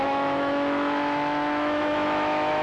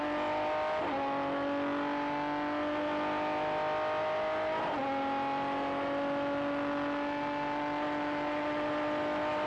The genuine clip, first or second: second